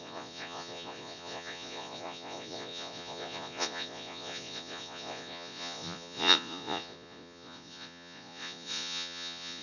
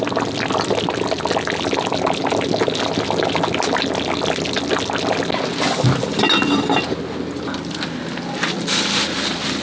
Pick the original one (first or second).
second